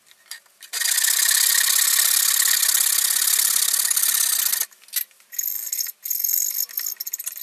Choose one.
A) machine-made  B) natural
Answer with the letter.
B